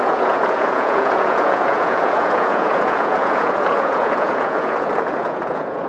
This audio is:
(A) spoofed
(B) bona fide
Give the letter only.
A